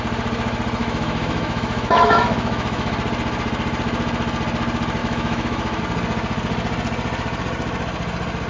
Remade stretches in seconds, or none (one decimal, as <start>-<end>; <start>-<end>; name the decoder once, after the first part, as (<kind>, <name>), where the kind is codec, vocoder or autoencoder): 0.8-2.9 (autoencoder, DAC-VAE); 5.0-5.8

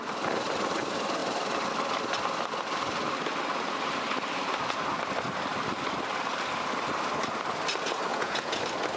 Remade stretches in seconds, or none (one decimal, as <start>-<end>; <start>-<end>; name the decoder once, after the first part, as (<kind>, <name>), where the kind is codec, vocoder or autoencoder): 8.1-8.6 (vocoder, Vocos)